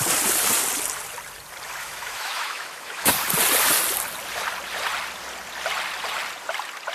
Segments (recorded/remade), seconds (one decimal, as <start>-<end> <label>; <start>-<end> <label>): 0.0-1.8 recorded; 1.8-3.1 remade; 3.1-6.9 recorded